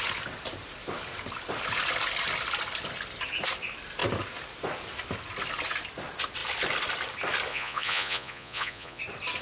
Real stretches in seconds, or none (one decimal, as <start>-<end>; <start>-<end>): 0.0-7.5; 9.0-9.4